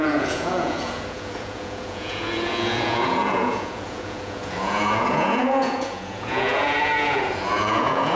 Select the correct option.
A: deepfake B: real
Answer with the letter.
A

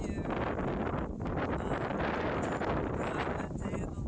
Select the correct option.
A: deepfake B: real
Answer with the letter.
B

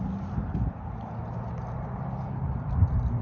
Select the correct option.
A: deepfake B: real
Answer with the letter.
B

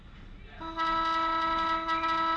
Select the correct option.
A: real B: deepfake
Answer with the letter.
A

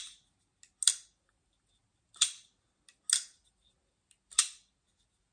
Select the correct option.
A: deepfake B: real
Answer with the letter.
B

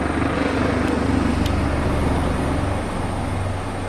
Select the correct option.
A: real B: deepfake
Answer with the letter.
A